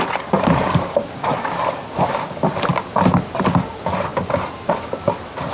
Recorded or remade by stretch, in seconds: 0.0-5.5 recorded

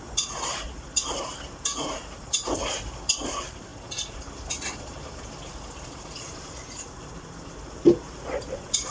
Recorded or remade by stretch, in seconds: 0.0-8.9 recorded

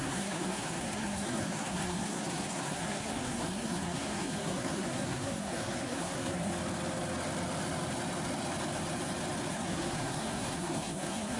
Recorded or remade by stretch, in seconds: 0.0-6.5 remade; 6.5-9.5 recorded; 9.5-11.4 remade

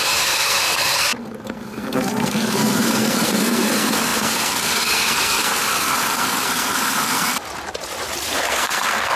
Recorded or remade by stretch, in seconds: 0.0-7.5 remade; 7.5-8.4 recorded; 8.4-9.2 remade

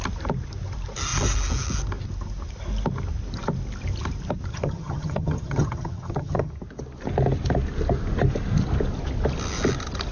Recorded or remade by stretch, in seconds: 0.0-4.5 recorded; 4.5-6.5 remade; 6.5-10.1 recorded

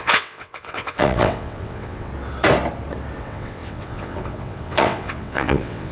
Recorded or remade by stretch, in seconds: 0.0-2.1 remade; 2.1-3.2 recorded; 3.2-5.9 remade

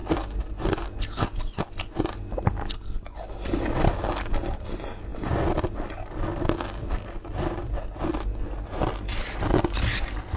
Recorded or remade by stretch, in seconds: 0.0-10.4 recorded

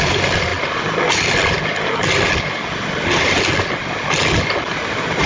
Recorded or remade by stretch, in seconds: 0.0-5.3 recorded